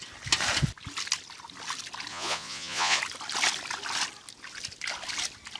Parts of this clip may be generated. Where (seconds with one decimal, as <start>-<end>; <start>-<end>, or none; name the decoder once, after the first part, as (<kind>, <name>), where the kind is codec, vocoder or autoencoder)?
2.1-3.0 (vocoder, Vocos)